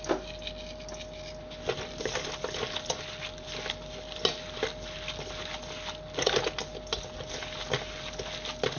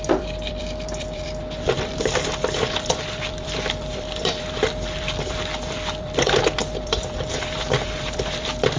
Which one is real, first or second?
first